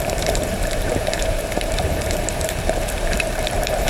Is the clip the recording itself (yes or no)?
no